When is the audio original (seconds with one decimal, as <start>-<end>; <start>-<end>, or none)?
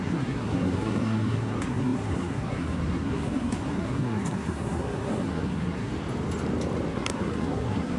5.9-6.9